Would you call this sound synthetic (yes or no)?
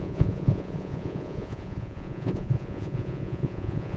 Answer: yes